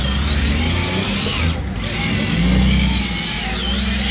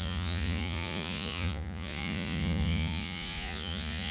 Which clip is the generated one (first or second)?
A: second